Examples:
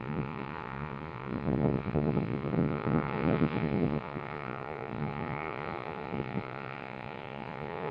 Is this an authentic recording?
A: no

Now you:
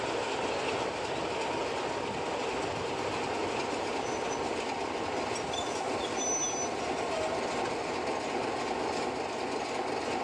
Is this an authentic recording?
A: yes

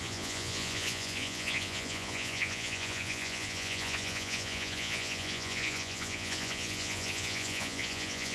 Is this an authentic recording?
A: no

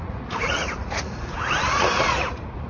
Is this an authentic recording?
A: no